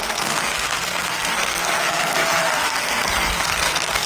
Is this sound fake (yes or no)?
yes